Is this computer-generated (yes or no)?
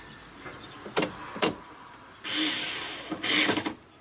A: no